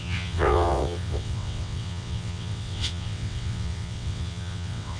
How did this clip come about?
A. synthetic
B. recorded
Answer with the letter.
A